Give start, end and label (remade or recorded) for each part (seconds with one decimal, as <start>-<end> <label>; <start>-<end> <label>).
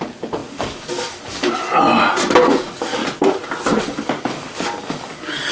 0.0-1.7 remade; 1.7-2.4 recorded; 2.4-3.0 remade; 3.0-3.8 recorded; 3.8-5.5 remade